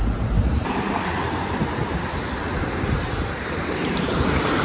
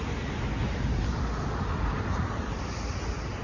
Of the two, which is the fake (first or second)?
first